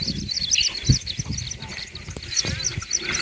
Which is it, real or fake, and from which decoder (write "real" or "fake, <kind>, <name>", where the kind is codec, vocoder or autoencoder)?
real